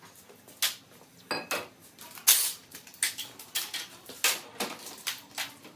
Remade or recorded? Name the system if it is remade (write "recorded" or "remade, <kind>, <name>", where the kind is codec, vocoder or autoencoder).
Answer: recorded